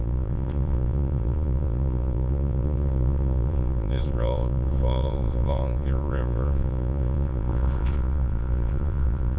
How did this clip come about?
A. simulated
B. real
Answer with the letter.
A